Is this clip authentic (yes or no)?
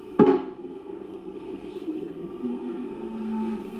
no